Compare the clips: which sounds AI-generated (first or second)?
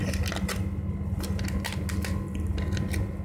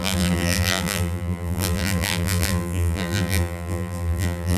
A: second